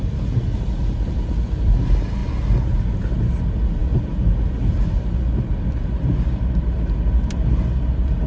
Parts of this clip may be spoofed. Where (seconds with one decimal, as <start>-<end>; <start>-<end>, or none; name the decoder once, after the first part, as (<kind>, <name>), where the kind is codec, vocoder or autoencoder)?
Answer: none